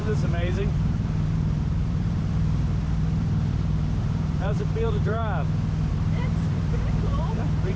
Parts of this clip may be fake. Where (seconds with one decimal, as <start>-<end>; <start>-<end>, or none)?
0.0-5.2; 5.9-7.8